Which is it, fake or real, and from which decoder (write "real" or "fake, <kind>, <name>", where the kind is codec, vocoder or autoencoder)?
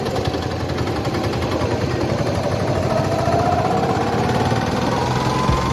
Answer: real